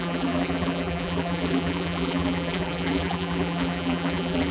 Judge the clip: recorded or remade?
remade